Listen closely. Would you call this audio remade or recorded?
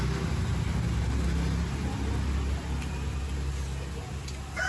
recorded